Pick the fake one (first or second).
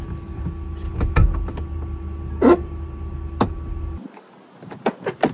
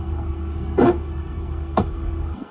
second